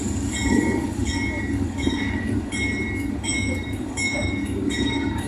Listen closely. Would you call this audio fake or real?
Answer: fake